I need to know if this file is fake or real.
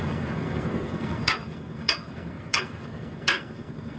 fake